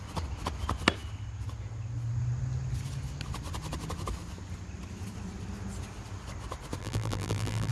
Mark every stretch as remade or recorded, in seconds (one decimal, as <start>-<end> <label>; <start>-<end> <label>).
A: 0.0-6.8 recorded; 6.8-7.7 remade